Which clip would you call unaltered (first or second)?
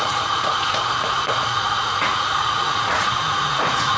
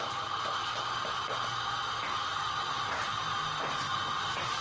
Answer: second